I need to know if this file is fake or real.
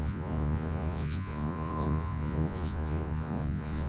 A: fake